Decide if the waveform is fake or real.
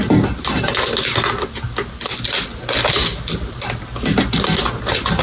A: real